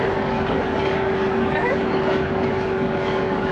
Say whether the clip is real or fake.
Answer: fake